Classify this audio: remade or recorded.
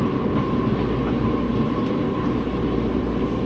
recorded